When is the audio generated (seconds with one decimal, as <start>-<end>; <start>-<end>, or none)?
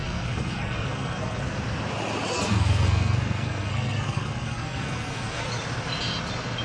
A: 0.0-1.4; 2.3-5.5